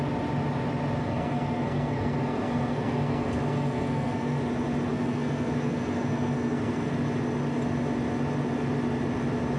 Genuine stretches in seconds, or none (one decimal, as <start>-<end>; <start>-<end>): 0.0-1.0; 4.4-4.9; 6.9-9.6